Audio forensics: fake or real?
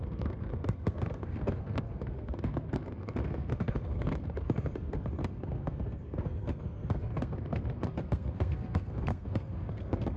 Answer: fake